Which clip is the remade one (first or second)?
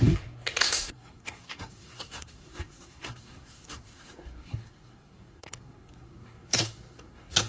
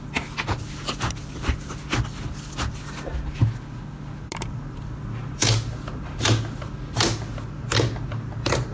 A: first